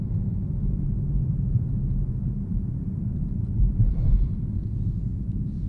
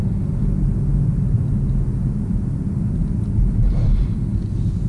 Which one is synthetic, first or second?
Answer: first